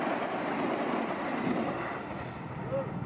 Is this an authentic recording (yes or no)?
yes